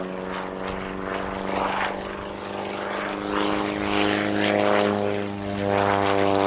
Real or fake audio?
real